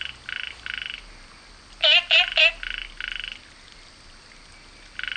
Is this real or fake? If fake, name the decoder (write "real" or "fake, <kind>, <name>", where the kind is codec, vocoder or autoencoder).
real